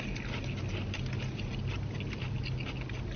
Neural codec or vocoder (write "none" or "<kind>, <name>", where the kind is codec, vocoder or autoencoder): none